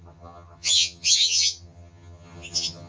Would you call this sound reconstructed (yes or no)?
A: yes